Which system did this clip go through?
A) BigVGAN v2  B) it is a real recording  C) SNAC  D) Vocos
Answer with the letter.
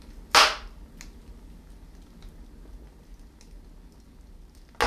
B